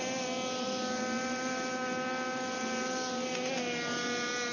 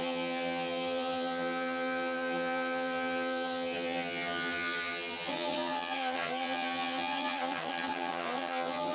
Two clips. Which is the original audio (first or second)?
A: first